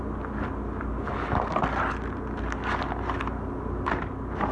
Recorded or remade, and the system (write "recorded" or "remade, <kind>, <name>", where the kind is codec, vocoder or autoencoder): recorded